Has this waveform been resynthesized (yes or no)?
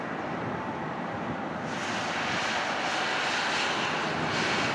no